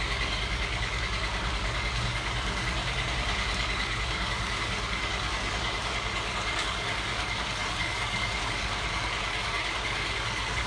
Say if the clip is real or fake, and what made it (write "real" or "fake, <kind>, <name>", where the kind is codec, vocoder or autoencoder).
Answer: fake, codec, DAC